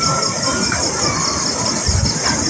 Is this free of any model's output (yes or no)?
yes